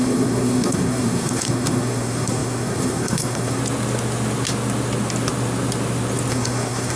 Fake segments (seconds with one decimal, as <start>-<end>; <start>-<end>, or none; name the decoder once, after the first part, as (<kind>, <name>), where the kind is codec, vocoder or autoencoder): 0.0-3.6 (codec, SNAC); 6.3-7.0

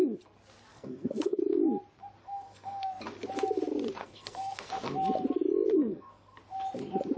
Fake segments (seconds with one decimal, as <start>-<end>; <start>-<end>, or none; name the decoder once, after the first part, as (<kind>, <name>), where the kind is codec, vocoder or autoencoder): 0.7-1.4 (codec, SNAC); 2.2-3.0; 4.0-4.7; 5.8-6.4

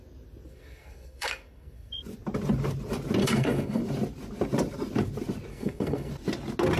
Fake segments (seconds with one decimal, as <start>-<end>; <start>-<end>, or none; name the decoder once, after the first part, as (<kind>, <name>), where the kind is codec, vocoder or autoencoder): 0.5-1.9 (codec, SNAC); 3.2-3.8; 5.5-6.1

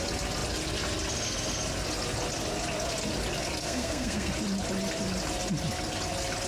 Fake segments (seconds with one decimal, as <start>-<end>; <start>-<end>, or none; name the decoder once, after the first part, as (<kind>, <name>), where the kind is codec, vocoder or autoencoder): 3.6-4.3 (codec, SNAC)

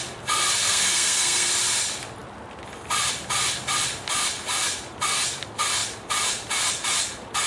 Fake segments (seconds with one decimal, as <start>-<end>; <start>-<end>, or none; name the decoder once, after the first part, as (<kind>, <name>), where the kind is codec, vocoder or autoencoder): 0.6-1.5 (codec, SNAC)

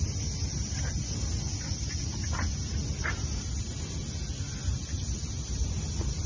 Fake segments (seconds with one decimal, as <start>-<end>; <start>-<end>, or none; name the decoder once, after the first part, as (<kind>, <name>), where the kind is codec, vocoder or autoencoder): none